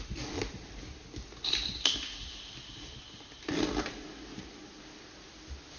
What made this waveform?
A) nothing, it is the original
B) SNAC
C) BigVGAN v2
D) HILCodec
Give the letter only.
A